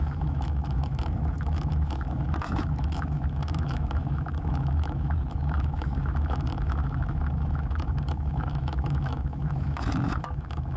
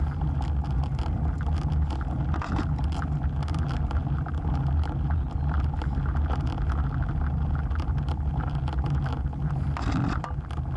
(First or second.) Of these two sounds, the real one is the second